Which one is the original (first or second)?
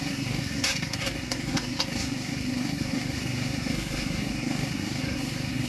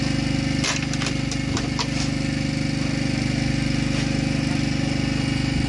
second